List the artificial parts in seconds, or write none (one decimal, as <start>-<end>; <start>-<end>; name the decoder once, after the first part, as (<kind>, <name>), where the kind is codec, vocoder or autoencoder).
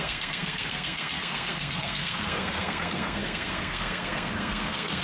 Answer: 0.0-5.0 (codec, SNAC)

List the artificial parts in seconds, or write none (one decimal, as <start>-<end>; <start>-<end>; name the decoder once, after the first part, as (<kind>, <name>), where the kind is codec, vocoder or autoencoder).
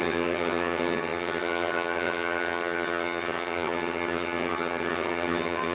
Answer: 0.0-5.7 (vocoder, HiFi-GAN)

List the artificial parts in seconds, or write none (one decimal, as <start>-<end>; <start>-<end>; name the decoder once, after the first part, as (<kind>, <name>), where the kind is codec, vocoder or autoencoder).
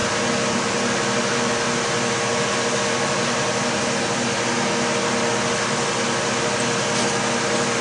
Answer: none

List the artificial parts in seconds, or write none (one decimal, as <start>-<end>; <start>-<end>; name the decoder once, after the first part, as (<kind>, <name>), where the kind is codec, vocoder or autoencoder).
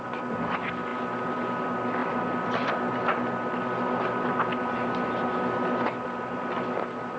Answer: 2.0-2.8 (vocoder, BigVGAN v2)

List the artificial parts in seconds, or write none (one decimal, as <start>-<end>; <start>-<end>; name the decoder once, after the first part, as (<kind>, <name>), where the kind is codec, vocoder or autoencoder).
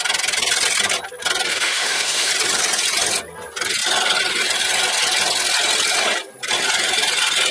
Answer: 1.5-2.3 (autoencoder, DAC-VAE)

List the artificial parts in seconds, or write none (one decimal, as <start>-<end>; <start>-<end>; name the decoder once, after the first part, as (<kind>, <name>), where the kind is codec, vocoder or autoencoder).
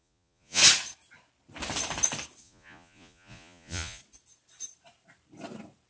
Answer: 0.0-0.6 (vocoder, Vocos); 2.4-4.0